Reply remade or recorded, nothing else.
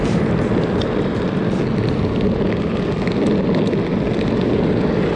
recorded